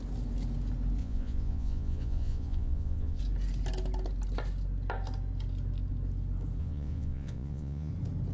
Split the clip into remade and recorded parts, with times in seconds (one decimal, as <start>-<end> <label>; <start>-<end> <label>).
0.0-1.0 recorded; 1.0-3.2 remade; 3.2-6.6 recorded; 6.6-7.9 remade; 7.9-8.3 recorded